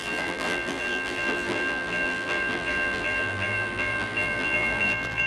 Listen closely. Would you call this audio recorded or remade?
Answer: remade